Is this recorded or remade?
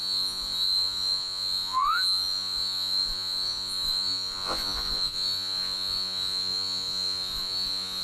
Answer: remade